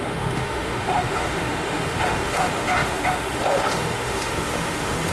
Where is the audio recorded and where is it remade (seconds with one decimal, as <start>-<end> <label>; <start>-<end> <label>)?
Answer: 0.0-5.1 remade